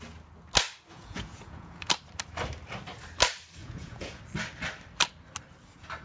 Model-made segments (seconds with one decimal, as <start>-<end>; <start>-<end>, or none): 0.9-1.9; 3.6-4.2

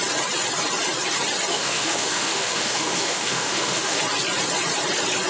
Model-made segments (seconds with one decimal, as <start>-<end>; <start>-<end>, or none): 1.5-4.0

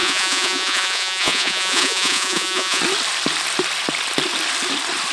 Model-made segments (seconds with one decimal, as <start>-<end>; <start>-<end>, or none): 0.0-2.8

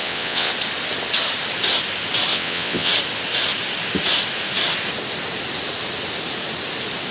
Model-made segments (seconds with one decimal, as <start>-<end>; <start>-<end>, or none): 0.0-0.5; 2.3-2.9

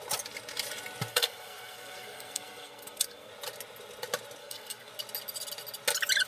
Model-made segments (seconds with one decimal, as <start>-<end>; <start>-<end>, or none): 1.1-3.3; 4.4-4.9